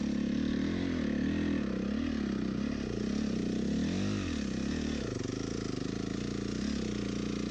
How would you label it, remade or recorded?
recorded